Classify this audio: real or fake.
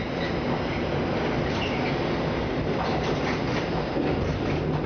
real